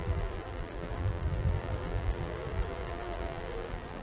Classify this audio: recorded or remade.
remade